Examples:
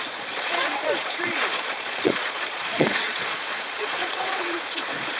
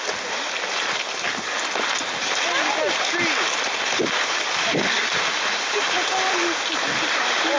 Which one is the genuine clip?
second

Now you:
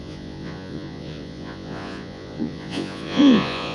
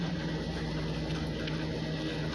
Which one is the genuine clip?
second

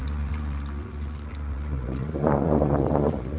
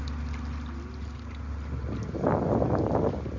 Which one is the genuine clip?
second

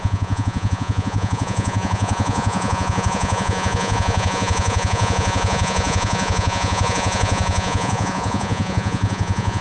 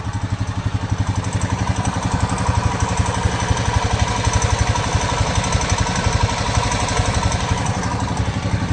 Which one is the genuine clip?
second